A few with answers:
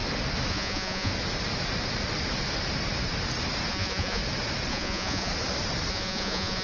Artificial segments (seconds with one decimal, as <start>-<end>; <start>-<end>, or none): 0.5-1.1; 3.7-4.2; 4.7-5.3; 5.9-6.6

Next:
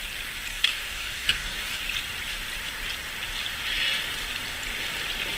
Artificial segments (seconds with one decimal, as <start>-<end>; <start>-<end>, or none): 0.5-1.8

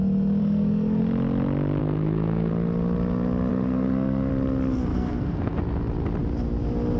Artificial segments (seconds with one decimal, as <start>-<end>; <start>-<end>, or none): 0.4-1.0; 1.8-2.5; 3.5-4.3; 4.9-5.6

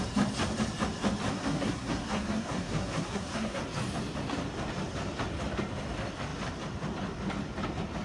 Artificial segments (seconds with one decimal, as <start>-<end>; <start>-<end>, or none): 1.3-3.6